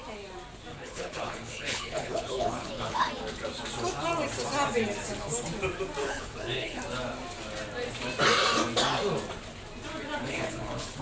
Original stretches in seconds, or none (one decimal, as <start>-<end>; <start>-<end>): 0.0-0.7; 3.1-6.0; 6.8-10.2